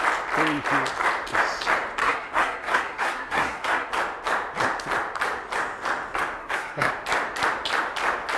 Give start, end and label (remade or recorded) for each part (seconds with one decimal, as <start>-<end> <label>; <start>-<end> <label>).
0.0-2.0 recorded; 2.0-3.9 remade; 3.9-6.4 recorded; 6.4-6.9 remade; 6.9-8.4 recorded